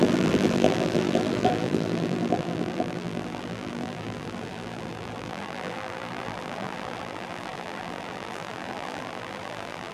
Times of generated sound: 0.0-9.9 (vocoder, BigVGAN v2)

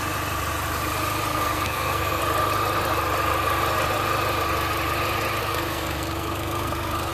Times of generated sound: 1.3-2.2 (codec, SNAC); 5.4-7.1

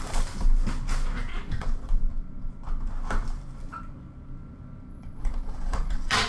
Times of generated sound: 1.3-1.9 (vocoder, Vocos); 4.9-6.3

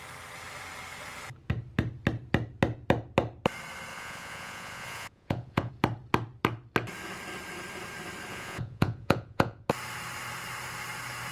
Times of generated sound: 3.9-5.7 (vocoder, Vocos); 8.3-9.7

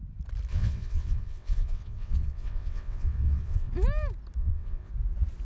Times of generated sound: 0.5-3.7 (vocoder, WaveNeXt); 4.4-4.9

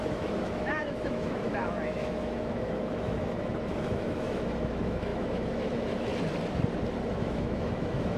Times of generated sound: 0.0-6.1 (autoencoder, DAC-VAE); 7.1-8.2